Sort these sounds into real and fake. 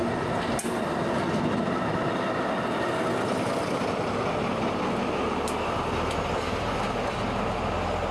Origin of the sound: real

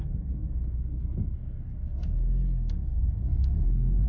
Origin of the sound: fake